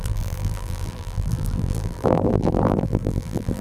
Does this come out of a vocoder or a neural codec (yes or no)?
yes